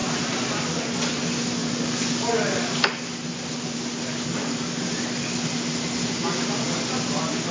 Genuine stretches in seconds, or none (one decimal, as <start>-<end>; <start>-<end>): 0.0-1.6; 2.7-4.1; 4.8-7.5